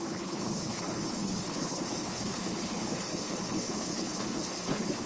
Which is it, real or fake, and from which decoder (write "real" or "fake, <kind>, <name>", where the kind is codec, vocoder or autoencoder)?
fake, codec, HILCodec